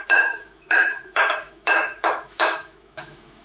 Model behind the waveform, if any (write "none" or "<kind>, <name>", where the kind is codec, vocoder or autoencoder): autoencoder, DAC-VAE